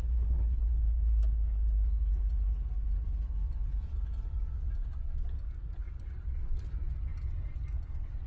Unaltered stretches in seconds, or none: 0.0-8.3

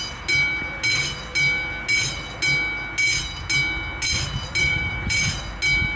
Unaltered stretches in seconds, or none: 0.0-4.6; 5.4-6.0

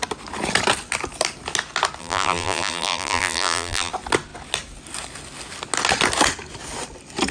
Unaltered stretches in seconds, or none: 0.0-2.0; 3.9-7.3